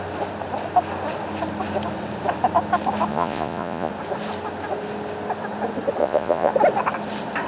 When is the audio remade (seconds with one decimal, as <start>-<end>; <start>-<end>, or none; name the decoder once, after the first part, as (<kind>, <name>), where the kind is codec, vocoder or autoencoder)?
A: 3.1-3.9 (vocoder, Vocos); 6.0-6.5